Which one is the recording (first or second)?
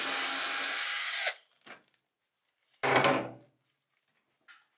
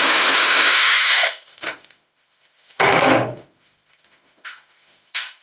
first